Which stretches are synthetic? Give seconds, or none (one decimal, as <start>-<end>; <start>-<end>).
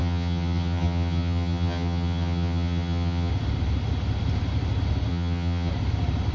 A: 0.0-3.3; 5.1-5.7